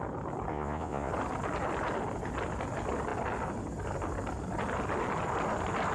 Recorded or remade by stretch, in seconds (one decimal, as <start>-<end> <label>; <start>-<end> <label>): 0.0-0.5 recorded; 0.5-1.1 remade; 1.1-5.9 recorded

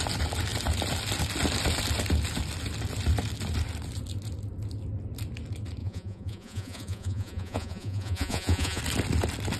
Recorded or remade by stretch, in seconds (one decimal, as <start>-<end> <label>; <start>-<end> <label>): 0.0-5.8 recorded; 5.8-8.8 remade; 8.8-9.6 recorded

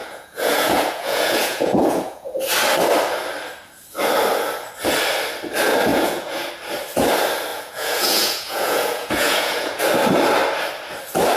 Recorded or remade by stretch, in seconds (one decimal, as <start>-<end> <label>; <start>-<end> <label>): 0.0-2.4 remade; 2.4-5.9 recorded; 5.9-6.5 remade; 6.5-7.5 recorded; 7.5-9.8 remade; 9.8-11.4 recorded

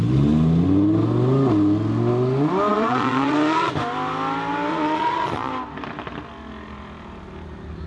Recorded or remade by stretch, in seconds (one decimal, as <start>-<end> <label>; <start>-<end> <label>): 0.0-2.7 recorded; 2.7-3.7 remade; 3.7-4.7 recorded; 4.7-5.5 remade; 5.5-7.9 recorded

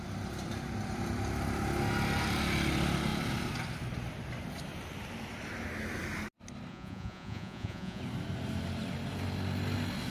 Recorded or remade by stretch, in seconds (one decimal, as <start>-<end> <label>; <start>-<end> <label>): 0.0-6.7 recorded; 6.7-8.0 remade; 8.0-10.1 recorded